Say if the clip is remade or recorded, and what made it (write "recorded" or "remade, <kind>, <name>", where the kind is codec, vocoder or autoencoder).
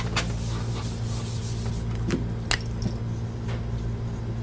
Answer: recorded